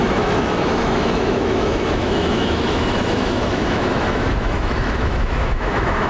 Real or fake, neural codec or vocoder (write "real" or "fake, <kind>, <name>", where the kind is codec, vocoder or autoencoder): fake, autoencoder, DAC-VAE